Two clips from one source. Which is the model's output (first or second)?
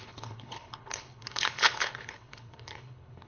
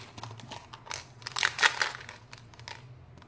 first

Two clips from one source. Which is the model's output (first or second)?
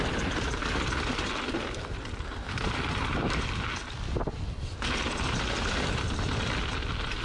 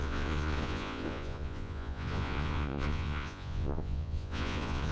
second